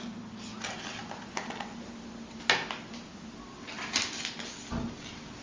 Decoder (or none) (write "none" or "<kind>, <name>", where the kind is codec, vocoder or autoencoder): none